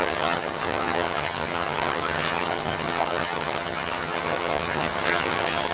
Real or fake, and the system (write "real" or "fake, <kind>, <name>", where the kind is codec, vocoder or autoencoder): fake, vocoder, HiFi-GAN